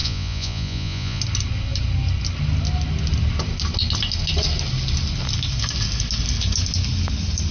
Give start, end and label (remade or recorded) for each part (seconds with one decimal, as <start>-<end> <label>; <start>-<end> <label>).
0.0-1.2 remade; 1.2-7.5 recorded